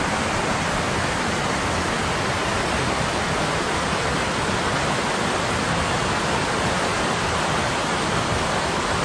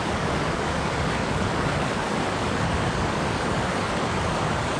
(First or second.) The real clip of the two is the first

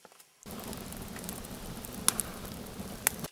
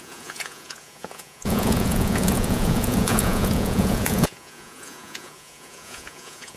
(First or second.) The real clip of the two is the first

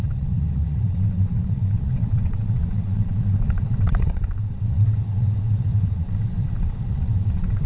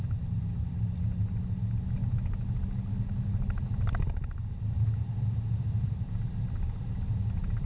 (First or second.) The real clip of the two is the second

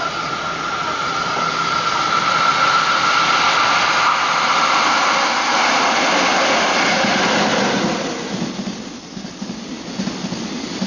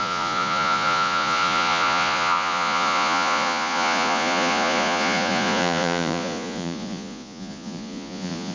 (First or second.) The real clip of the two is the first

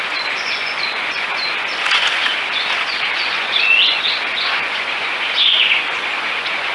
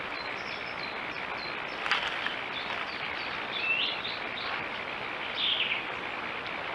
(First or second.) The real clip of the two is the second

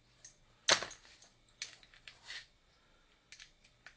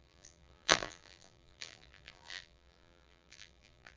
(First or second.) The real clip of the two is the first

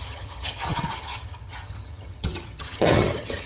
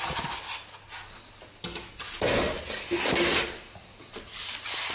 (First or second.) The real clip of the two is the second